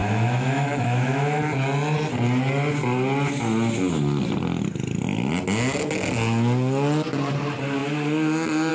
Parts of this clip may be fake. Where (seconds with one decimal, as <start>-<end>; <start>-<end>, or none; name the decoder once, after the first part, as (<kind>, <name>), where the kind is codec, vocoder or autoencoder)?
0.0-1.4 (autoencoder, DAC-VAE)